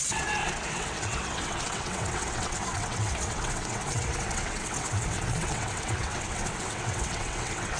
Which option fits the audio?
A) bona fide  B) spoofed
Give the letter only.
B